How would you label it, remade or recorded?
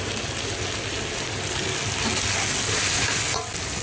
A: recorded